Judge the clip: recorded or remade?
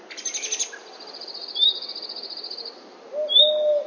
recorded